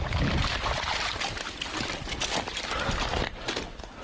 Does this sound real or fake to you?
real